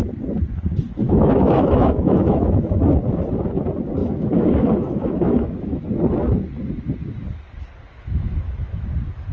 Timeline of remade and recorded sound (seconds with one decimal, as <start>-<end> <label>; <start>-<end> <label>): 0.0-1.0 recorded; 1.0-2.8 remade; 2.8-4.0 recorded; 4.0-5.8 remade; 5.8-7.9 recorded; 7.9-8.9 remade; 8.9-9.3 recorded